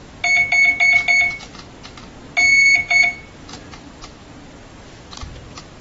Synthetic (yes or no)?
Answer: no